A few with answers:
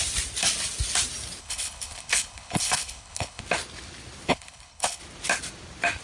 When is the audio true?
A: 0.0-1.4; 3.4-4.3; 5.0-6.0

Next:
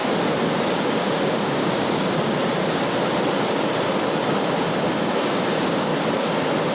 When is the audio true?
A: 0.0-0.6; 2.4-4.5; 5.9-6.7

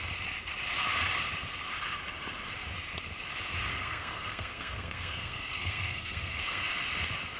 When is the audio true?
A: 0.0-3.7; 6.6-7.4

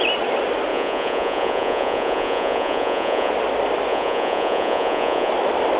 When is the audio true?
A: 0.0-0.7; 3.3-3.9; 5.3-5.8

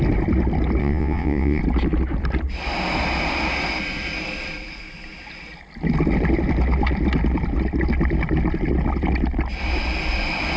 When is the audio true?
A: 0.0-0.8; 1.6-10.6

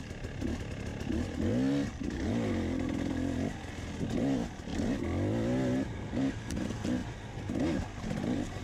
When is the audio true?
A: 0.0-8.6